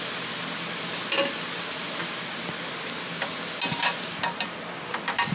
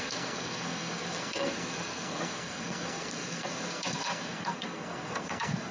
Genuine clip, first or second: first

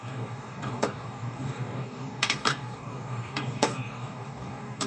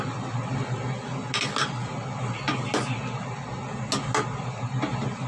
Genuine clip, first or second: second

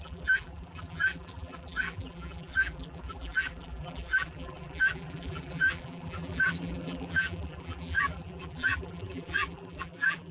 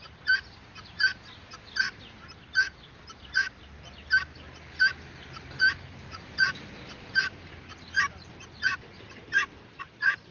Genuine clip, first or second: second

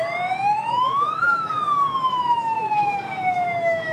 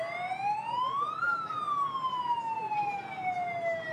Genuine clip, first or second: second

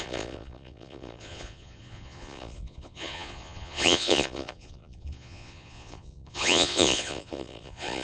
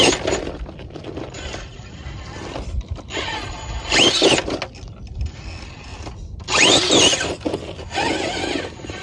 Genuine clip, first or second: second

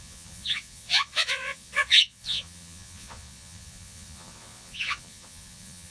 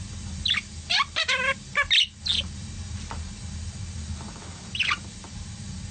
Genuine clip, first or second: second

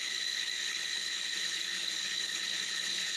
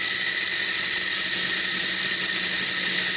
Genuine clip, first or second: second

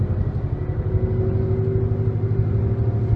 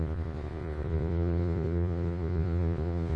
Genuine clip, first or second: first